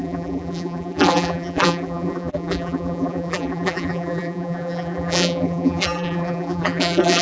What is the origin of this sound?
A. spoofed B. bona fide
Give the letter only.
A